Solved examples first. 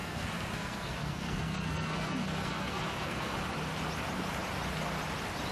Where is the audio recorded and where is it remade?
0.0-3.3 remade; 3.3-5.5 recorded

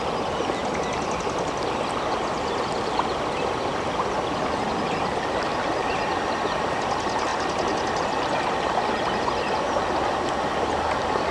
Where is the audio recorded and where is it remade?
0.0-11.3 recorded

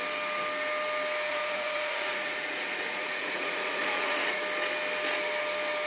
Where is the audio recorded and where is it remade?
0.0-1.3 recorded; 1.3-4.4 remade; 4.4-5.9 recorded

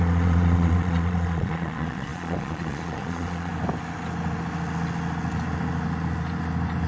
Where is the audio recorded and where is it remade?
0.0-3.5 remade; 3.5-6.9 recorded

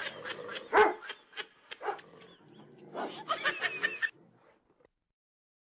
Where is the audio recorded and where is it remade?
0.0-5.7 recorded

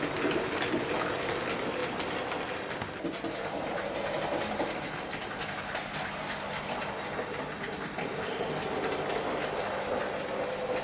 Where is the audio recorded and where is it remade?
0.0-10.8 recorded

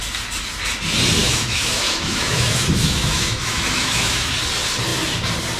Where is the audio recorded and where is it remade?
0.0-1.2 recorded; 1.2-4.3 remade; 4.3-5.6 recorded

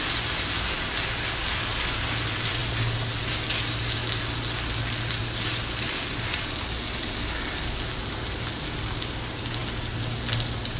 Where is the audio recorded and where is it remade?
0.0-2.6 remade; 2.6-3.2 recorded; 3.2-4.0 remade; 4.0-4.8 recorded; 4.8-5.2 remade; 5.2-6.9 recorded; 6.9-9.6 remade; 9.6-10.8 recorded